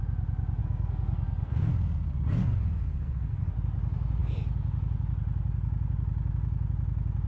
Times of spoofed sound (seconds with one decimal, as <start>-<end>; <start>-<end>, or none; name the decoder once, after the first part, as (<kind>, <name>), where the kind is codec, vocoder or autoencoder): 0.6-1.7 (codec, SNAC); 2.4-3.5